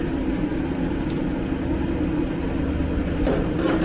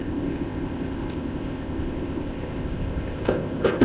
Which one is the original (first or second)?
first